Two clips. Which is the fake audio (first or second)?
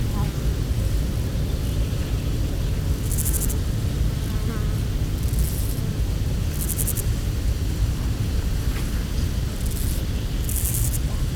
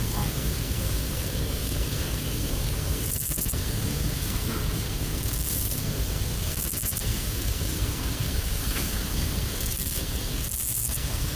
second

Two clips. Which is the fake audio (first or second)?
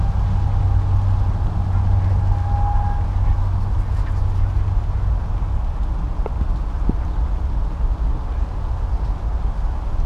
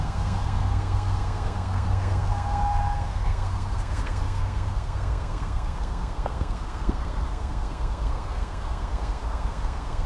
second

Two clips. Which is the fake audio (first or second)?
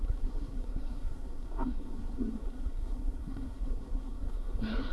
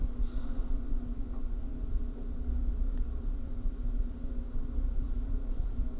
first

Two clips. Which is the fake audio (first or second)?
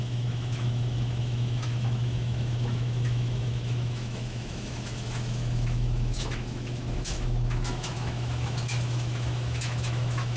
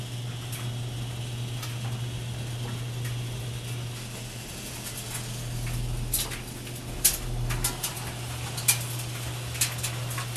first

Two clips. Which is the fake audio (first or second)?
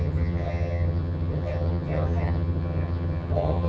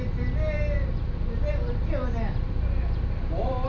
first